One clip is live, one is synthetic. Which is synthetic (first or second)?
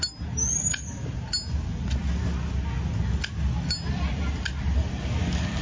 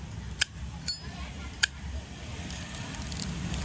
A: second